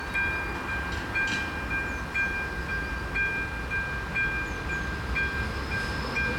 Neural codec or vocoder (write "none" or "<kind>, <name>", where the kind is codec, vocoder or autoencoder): none